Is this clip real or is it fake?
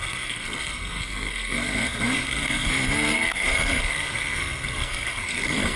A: fake